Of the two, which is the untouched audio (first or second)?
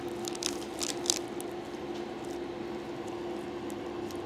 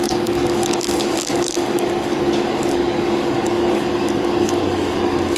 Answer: first